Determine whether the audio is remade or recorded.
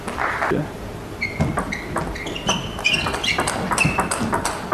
recorded